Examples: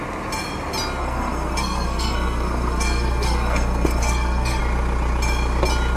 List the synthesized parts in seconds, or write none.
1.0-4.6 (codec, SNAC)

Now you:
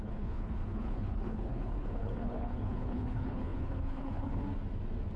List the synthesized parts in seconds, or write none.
0.0-4.4 (codec, HILCodec)

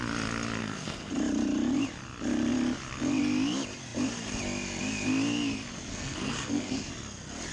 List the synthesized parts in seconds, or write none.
0.6-1.1 (codec, SNAC); 5.9-6.9

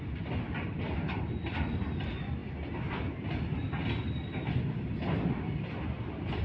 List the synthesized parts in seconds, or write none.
none

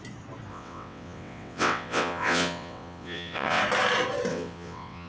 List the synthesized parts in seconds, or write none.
0.5-3.6 (vocoder, WaveNeXt); 4.3-5.1

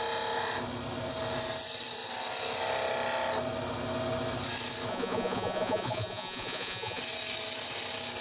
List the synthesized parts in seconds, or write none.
4.9-7.0 (vocoder, Vocos)